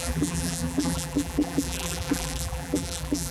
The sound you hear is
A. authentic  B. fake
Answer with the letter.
B